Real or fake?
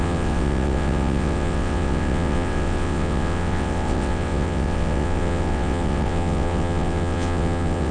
fake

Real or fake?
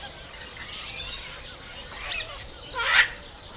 real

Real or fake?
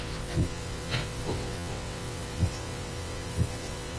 fake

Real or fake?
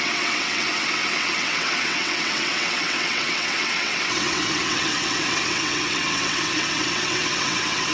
fake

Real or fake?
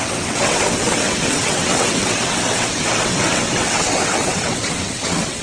fake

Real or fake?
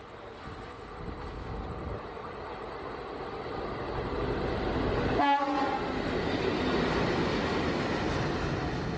real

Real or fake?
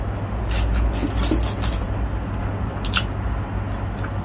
real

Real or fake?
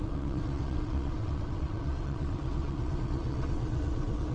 fake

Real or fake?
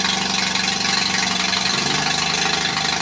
real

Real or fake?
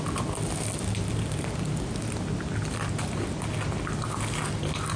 real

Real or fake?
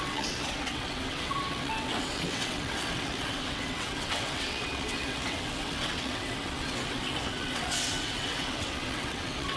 fake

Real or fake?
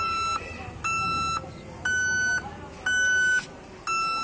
real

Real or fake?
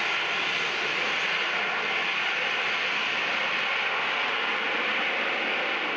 real